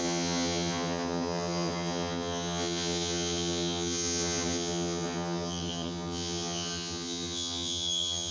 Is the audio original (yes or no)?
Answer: no